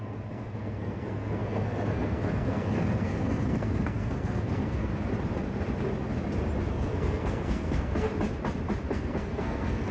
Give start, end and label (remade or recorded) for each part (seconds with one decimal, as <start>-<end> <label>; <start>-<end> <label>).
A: 0.0-4.9 remade; 4.9-6.7 recorded; 6.7-8.1 remade; 8.1-8.9 recorded; 8.9-9.9 remade